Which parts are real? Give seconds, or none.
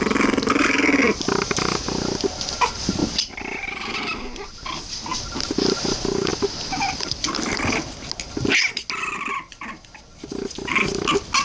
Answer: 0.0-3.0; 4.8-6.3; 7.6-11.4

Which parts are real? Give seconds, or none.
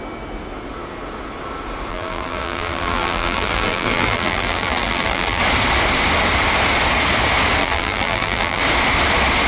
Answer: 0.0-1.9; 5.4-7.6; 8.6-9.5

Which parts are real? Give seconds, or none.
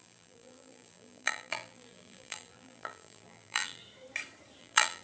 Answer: 3.8-4.6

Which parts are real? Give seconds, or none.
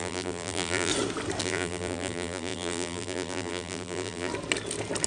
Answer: 0.9-1.4; 4.3-5.1